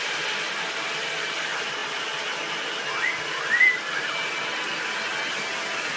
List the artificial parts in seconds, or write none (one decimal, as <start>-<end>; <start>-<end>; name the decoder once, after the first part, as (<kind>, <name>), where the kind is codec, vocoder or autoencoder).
none